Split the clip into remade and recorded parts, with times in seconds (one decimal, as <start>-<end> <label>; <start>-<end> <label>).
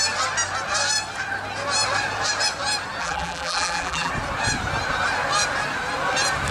0.0-3.0 recorded; 3.0-4.1 remade; 4.1-6.5 recorded